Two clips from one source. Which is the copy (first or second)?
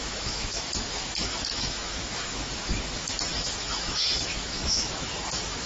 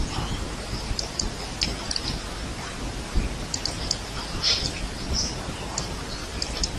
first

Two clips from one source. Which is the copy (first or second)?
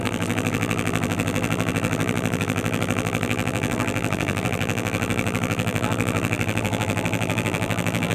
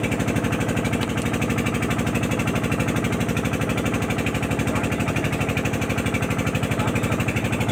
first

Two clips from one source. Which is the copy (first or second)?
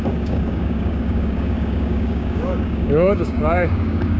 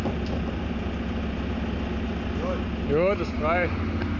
first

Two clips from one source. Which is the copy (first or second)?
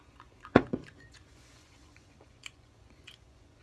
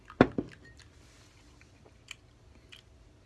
first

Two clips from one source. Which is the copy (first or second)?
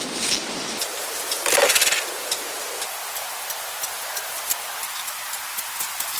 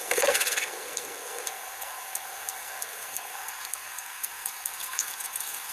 second